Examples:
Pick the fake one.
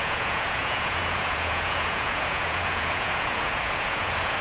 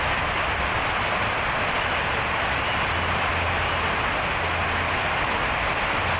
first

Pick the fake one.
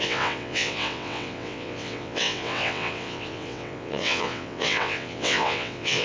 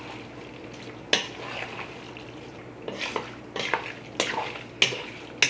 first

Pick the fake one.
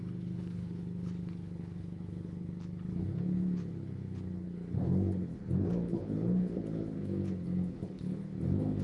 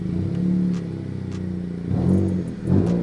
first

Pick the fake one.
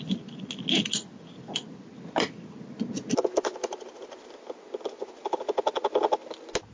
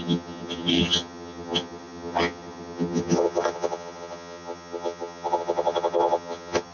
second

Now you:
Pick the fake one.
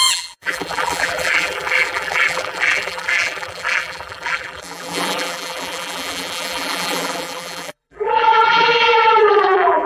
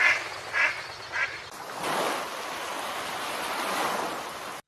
first